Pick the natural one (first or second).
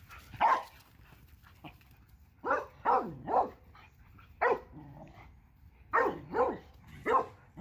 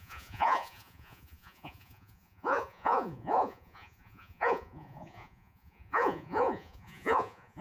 first